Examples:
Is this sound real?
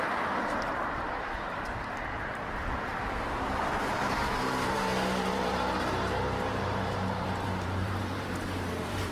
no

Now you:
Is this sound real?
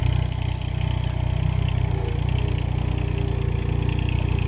yes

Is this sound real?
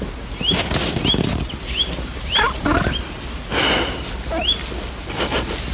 yes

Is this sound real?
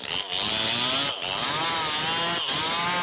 yes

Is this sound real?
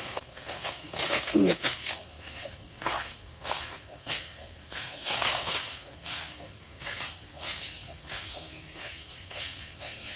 no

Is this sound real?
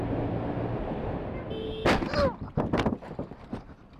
yes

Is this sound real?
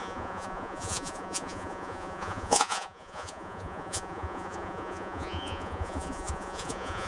no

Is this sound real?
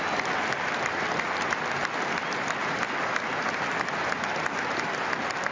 yes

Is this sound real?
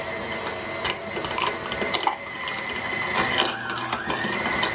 yes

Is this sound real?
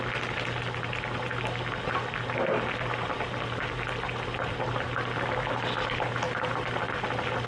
yes